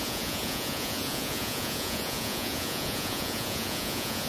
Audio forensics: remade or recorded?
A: remade